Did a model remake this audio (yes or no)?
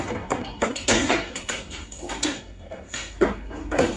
yes